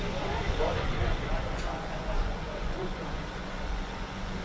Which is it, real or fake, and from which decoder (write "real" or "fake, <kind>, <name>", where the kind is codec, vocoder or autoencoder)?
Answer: fake, vocoder, Vocos